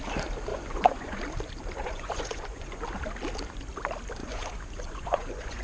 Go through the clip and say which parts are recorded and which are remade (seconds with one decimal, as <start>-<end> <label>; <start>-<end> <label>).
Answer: 0.0-0.5 recorded; 0.5-1.2 remade; 1.2-1.8 recorded; 1.8-2.8 remade; 2.8-4.2 recorded; 4.2-5.6 remade